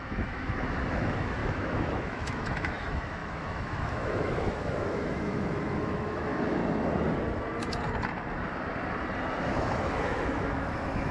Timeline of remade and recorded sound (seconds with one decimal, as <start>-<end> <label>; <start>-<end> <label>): 0.0-6.6 remade; 6.6-9.4 recorded; 9.4-11.1 remade